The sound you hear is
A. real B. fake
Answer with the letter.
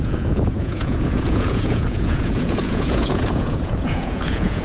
B